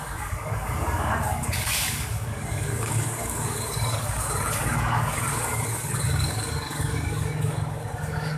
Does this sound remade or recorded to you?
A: remade